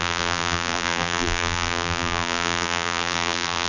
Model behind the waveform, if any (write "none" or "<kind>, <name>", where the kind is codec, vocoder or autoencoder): vocoder, BigVGAN v2